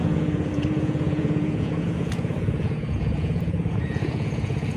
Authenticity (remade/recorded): remade